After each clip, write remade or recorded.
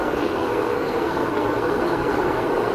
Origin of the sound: remade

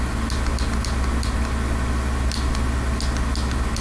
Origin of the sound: recorded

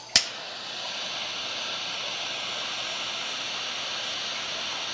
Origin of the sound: recorded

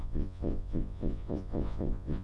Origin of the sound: remade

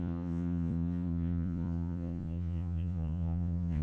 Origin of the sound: remade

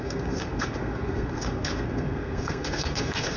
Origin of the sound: remade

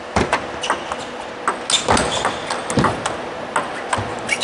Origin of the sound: recorded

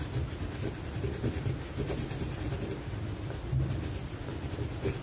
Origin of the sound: recorded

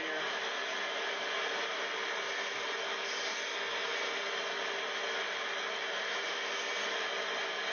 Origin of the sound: recorded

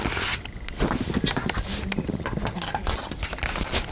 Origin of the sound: recorded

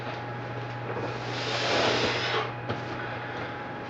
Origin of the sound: recorded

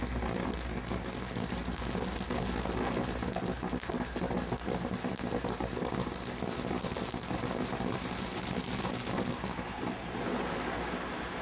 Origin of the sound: recorded